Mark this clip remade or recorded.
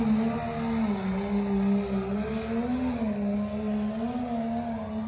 recorded